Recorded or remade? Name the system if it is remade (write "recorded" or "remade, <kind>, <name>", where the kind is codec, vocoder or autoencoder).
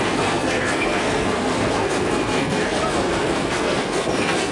remade, codec, SNAC